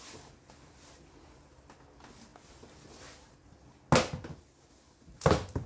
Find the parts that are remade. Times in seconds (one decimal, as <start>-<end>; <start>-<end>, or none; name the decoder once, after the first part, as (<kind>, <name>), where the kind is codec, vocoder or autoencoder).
none